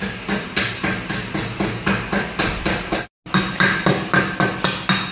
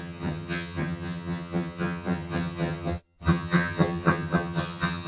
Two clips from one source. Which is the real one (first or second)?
first